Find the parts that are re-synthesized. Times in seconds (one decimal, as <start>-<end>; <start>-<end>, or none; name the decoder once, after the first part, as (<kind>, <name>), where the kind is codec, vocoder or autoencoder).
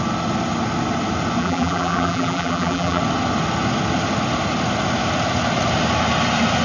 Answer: 1.4-3.0 (vocoder, BigVGAN v2)